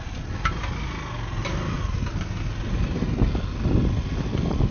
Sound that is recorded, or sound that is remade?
recorded